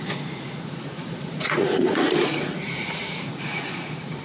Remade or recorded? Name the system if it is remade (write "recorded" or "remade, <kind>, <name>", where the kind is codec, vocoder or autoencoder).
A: remade, vocoder, Vocos